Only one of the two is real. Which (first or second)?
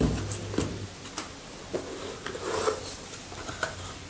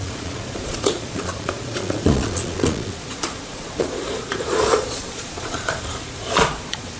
first